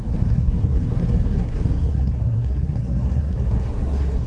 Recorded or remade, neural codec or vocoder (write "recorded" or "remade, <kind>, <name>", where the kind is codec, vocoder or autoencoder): remade, codec, SNAC